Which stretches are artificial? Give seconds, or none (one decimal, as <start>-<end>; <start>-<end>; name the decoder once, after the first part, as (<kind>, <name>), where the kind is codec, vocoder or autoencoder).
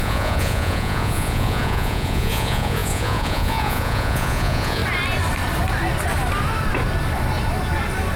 0.0-4.8 (vocoder, Vocos)